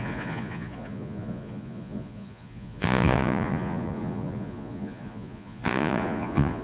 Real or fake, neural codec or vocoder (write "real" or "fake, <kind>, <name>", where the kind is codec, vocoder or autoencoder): fake, vocoder, Vocos